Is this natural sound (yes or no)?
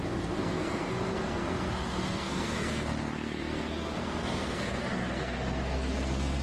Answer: no